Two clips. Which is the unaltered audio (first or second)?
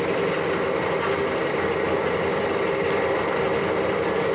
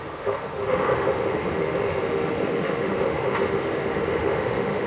first